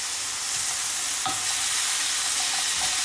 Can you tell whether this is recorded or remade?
recorded